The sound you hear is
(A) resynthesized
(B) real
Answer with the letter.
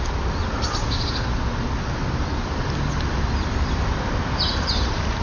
B